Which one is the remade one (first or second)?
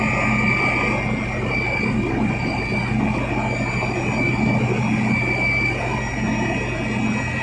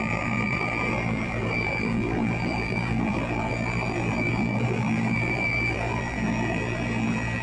second